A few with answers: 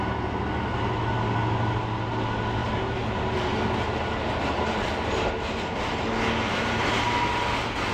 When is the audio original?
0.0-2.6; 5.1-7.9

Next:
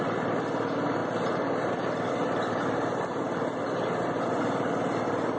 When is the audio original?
none

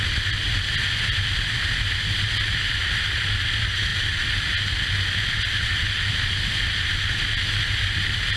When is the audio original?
0.0-8.4

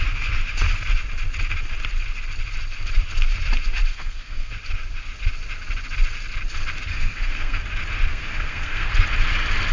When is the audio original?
0.0-3.9; 4.5-6.9; 7.6-8.1; 8.9-9.7